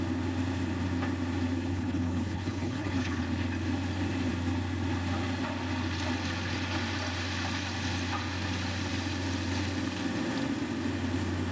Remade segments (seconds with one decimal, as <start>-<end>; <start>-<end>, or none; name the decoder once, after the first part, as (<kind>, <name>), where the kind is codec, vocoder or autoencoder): 1.7-3.2 (codec, HILCodec)